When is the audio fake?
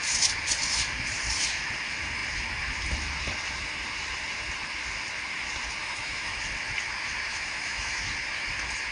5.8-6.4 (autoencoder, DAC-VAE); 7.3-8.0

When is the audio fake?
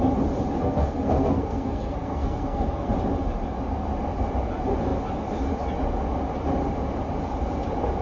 0.6-2.9 (codec, SNAC)